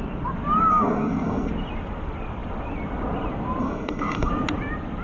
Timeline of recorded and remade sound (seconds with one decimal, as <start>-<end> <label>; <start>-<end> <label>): 0.0-0.7 recorded; 0.7-1.5 remade; 1.5-3.6 recorded; 3.6-4.3 remade; 4.3-5.0 recorded